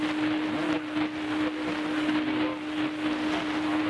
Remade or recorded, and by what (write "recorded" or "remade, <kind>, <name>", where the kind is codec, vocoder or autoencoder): recorded